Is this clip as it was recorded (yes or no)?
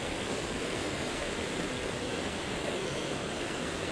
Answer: no